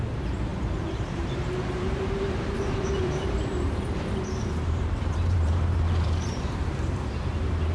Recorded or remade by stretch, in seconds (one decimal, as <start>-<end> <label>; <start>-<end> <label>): 0.0-7.7 remade